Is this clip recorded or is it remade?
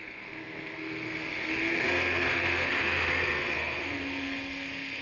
remade